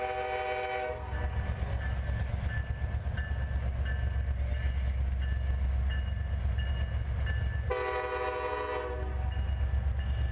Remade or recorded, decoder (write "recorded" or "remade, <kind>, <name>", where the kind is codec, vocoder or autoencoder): recorded